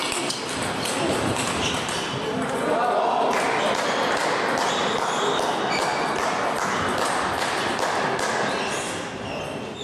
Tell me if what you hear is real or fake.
real